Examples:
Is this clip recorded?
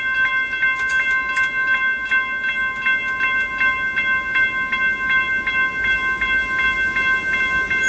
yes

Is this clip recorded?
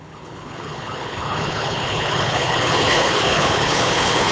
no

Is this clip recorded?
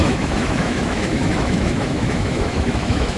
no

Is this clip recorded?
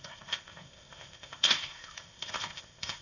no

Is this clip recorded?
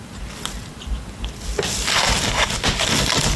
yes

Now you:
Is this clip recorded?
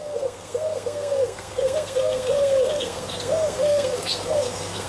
no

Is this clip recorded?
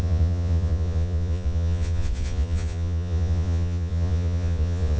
no